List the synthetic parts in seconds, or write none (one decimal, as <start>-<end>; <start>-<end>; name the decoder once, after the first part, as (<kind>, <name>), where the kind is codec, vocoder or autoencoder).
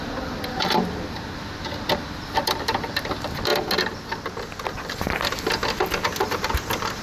0.0-3.5 (vocoder, BigVGAN v2); 5.0-7.0